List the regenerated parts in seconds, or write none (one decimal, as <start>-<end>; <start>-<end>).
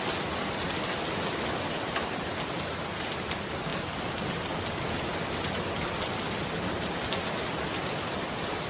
none